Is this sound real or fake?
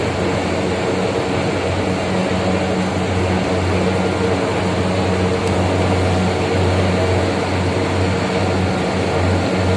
real